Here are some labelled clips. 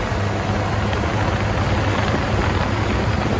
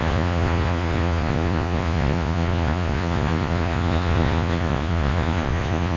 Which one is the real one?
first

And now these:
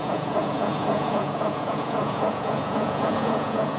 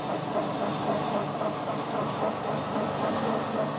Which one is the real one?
second